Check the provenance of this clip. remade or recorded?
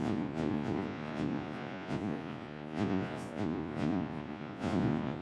remade